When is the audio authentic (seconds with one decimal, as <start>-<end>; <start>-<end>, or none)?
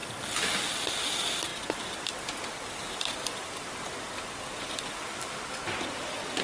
0.0-6.4